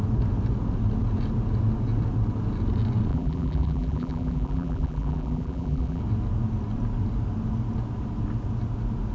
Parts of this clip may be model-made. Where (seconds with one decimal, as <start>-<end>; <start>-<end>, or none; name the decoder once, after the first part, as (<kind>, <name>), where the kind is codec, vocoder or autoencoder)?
3.1-6.0 (vocoder, BigVGAN v2)